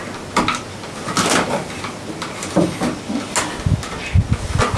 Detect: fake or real real